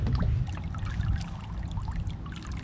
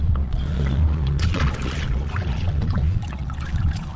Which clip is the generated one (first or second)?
second